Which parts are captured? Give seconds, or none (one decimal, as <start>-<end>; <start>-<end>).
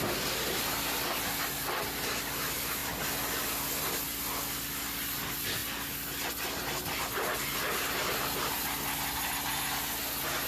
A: 0.0-10.5